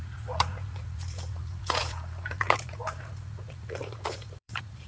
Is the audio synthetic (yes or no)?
yes